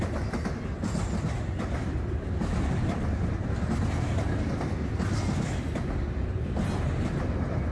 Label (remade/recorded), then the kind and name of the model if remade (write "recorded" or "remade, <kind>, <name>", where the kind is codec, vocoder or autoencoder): recorded